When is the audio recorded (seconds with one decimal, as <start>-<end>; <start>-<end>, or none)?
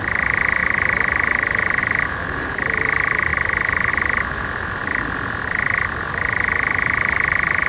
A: 4.8-6.1